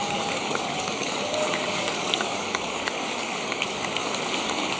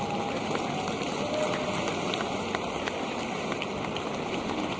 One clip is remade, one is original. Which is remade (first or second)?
first